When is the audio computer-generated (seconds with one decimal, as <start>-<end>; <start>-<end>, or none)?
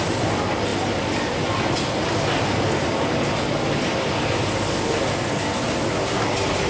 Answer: none